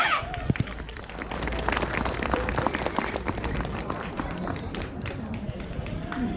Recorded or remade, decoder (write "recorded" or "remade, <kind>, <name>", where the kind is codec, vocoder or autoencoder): remade, vocoder, BigVGAN v2